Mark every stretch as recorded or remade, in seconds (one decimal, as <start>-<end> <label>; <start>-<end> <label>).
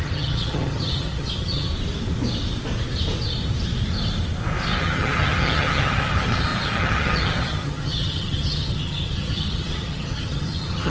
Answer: 0.0-1.7 remade; 1.7-4.8 recorded; 4.8-10.9 remade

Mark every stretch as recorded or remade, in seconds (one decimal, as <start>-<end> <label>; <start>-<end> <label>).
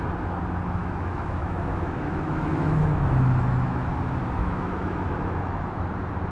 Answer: 0.0-0.8 recorded; 0.8-3.9 remade; 3.9-4.4 recorded; 4.4-5.7 remade; 5.7-6.3 recorded